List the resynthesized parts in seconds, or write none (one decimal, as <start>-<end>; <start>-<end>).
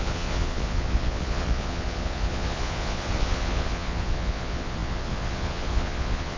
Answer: 0.0-6.4